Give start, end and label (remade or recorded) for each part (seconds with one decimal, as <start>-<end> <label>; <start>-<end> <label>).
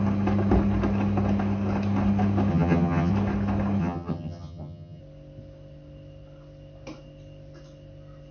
0.0-2.5 recorded; 2.5-3.1 remade; 3.1-3.8 recorded; 3.8-5.0 remade; 5.0-8.3 recorded